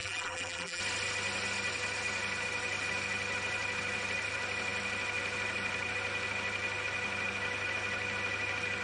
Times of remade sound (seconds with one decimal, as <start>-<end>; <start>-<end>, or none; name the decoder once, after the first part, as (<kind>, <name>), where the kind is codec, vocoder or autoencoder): 0.0-0.8 (vocoder, BigVGAN v2)